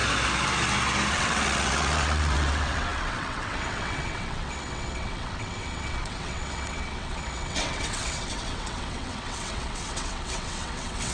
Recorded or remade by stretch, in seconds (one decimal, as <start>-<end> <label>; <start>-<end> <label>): 0.0-1.1 recorded; 1.1-11.1 remade